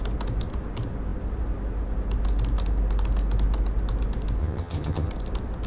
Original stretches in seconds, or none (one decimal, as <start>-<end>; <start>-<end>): 0.0-4.4; 5.1-5.7